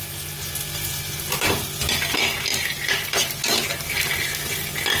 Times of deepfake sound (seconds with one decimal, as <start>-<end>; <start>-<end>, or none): 2.5-3.2